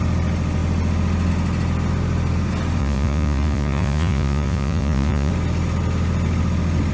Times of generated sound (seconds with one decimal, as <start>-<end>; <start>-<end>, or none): 2.8-5.3